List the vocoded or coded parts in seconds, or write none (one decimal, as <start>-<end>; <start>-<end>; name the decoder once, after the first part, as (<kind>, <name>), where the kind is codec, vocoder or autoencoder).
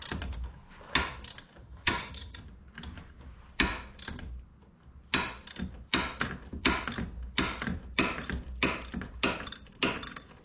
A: 1.6-2.4 (vocoder, HiFi-GAN)